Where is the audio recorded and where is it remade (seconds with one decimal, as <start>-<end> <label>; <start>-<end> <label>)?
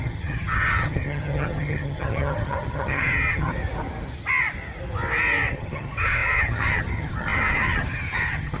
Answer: 0.0-3.5 remade; 3.5-5.5 recorded; 5.5-8.6 remade